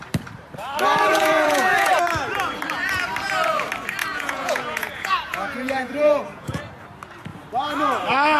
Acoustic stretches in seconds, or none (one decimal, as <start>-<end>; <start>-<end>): 0.0-1.1; 1.9-4.0; 6.6-8.4